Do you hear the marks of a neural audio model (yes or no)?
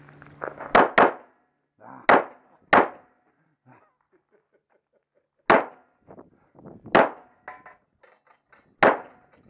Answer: no